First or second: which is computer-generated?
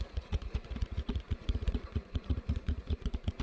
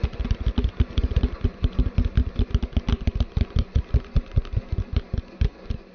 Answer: first